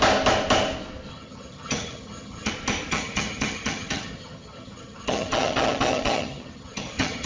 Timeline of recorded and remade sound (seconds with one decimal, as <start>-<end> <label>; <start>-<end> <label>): 0.0-1.1 recorded; 1.1-2.5 remade; 2.5-2.9 recorded; 2.9-7.3 remade